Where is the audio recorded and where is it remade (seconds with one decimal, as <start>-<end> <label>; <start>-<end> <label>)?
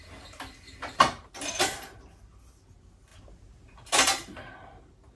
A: 0.0-5.2 recorded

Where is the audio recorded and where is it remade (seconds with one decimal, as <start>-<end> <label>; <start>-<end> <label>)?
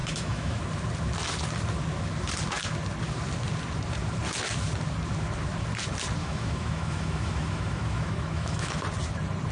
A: 0.0-0.6 remade; 0.6-6.2 recorded; 6.2-8.7 remade; 8.7-9.5 recorded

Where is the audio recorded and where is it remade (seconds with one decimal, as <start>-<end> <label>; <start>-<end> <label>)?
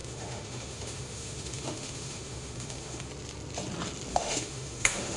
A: 0.0-3.1 remade; 3.1-4.1 recorded; 4.1-5.2 remade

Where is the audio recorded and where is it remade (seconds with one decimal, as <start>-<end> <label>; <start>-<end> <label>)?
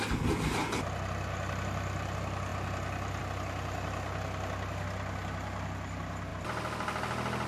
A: 0.0-7.5 recorded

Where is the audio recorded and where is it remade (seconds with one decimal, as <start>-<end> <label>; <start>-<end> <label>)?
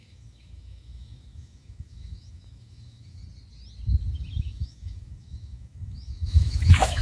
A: 0.0-3.2 remade; 3.2-4.4 recorded; 4.4-7.0 remade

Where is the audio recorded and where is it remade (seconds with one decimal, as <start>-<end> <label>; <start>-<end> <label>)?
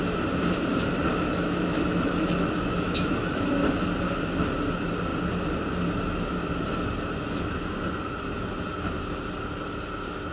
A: 0.0-0.7 recorded; 0.7-3.5 remade; 3.5-10.3 recorded